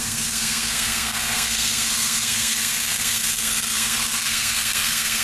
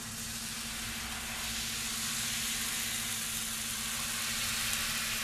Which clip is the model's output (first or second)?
first